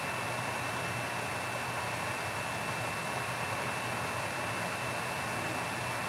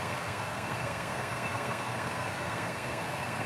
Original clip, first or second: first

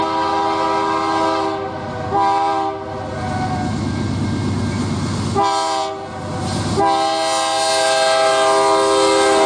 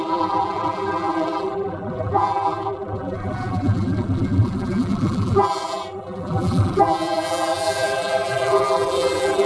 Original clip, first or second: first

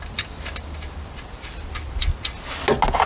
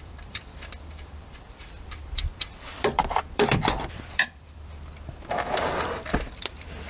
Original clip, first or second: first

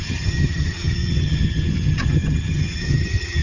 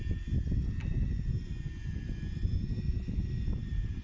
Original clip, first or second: second